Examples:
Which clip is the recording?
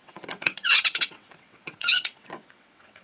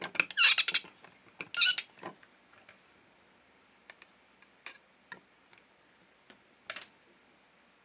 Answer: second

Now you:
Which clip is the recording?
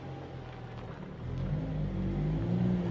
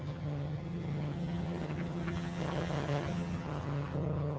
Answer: first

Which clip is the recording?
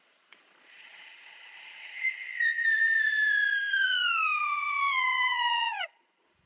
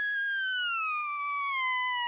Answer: second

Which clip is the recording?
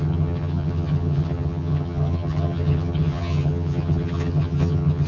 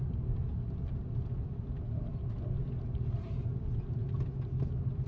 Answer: second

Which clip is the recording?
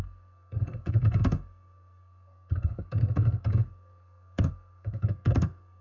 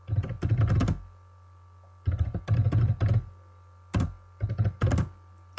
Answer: second